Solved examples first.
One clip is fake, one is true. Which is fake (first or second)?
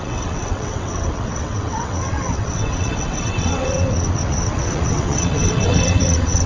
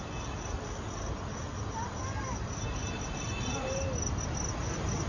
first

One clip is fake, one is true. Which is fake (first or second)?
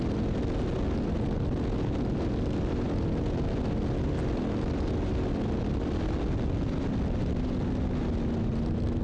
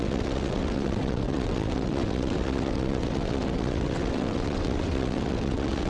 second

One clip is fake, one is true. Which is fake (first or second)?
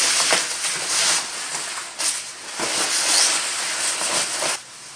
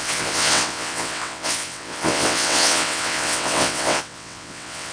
second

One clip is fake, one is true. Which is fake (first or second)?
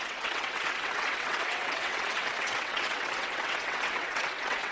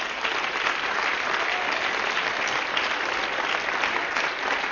first